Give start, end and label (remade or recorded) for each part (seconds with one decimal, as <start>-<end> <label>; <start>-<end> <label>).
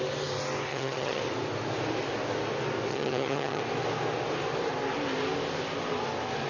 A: 0.0-0.7 recorded; 0.7-1.2 remade; 1.2-2.9 recorded; 2.9-3.6 remade; 3.6-6.5 recorded